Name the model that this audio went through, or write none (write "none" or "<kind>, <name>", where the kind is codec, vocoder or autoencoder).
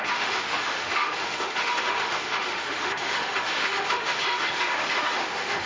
autoencoder, DAC-VAE